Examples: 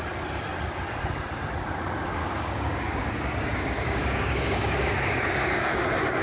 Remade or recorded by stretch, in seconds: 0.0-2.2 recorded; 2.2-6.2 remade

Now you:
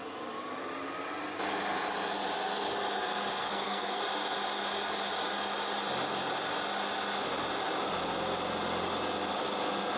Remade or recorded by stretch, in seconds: 0.0-3.4 recorded; 3.4-4.0 remade; 4.0-10.0 recorded

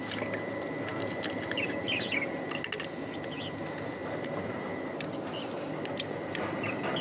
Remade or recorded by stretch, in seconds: 0.0-4.0 recorded; 4.0-4.7 remade; 4.7-7.0 recorded

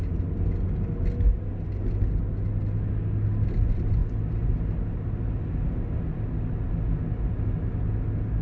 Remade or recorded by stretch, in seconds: 0.0-8.4 recorded